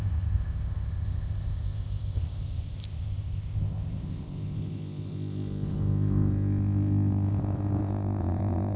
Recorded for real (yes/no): no